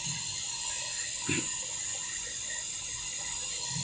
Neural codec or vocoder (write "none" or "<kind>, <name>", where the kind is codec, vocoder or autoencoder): vocoder, Vocos